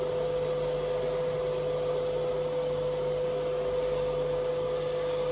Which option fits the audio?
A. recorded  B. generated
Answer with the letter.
A